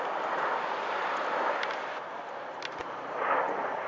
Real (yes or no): no